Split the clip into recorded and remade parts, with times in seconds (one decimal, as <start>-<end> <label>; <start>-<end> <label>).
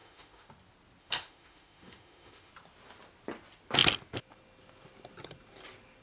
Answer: 0.0-0.5 remade; 0.5-1.0 recorded; 1.0-2.5 remade; 2.5-6.0 recorded